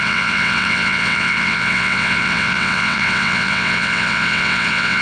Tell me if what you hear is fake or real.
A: fake